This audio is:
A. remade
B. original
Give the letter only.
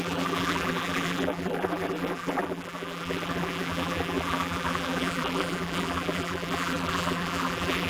A